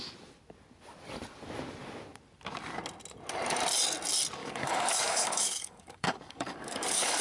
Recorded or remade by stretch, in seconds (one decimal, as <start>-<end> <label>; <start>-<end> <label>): 0.0-4.4 recorded; 4.4-7.2 remade